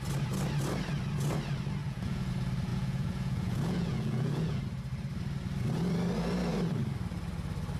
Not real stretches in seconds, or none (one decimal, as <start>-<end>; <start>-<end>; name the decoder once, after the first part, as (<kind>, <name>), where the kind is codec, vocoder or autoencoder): 1.8-2.3 (vocoder, Vocos); 2.7-4.6

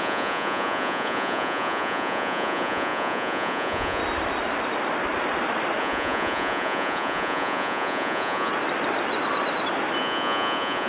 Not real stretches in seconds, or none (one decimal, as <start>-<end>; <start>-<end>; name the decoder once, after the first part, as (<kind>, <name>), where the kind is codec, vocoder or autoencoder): 0.0-4.0 (vocoder, Vocos); 5.8-8.5; 10.0-10.9

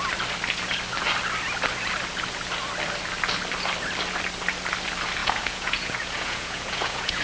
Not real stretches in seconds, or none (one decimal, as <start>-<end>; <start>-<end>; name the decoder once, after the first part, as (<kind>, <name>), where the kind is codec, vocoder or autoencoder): 5.2-7.2 (vocoder, Vocos)

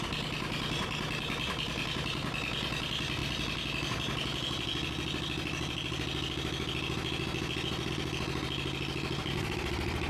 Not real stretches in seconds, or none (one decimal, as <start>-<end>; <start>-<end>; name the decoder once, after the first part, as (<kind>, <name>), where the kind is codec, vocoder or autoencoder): none

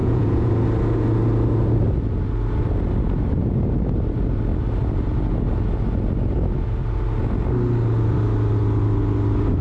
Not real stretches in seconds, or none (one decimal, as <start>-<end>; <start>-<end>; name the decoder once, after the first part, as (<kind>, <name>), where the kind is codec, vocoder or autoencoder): 0.0-0.5 (vocoder, Vocos)

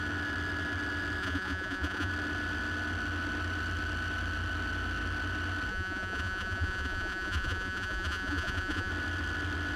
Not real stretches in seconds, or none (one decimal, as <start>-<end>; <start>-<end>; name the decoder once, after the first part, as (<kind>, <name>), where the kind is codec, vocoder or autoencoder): 1.2-2.1 (vocoder, Vocos); 5.7-8.9